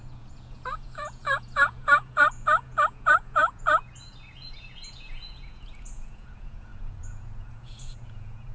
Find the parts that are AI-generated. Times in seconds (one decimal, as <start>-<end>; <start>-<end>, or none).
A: 0.0-8.5